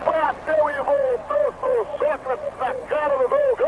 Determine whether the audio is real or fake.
fake